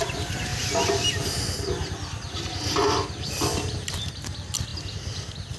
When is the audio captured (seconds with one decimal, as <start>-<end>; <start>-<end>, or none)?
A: 0.0-5.6

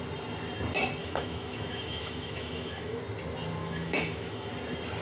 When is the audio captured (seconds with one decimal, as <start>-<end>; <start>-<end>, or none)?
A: 0.0-1.0; 3.0-3.6; 4.5-5.0

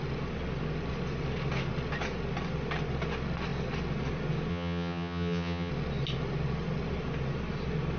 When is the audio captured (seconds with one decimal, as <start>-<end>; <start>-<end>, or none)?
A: 0.0-4.5; 5.7-8.0

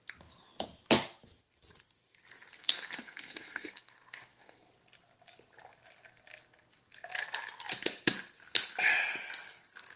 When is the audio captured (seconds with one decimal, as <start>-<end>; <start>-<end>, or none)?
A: 0.0-2.6; 4.7-10.0

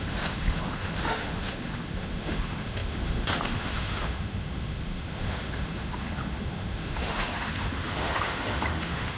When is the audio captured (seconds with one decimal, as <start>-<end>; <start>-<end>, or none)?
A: none

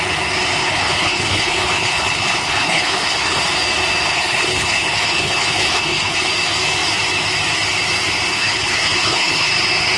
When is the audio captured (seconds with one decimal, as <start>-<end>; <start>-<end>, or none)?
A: 0.0-0.6; 3.4-4.1; 6.3-8.3; 9.5-10.0

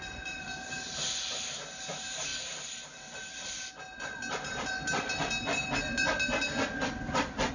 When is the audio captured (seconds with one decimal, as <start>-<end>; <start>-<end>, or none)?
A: 0.0-7.5

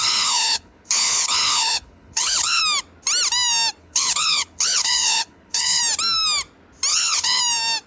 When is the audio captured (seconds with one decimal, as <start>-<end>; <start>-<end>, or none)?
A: 2.6-3.8; 5.8-6.9; 7.4-7.9